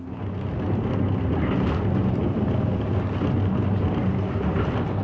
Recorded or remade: recorded